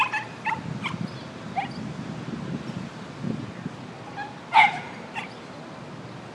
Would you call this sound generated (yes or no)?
no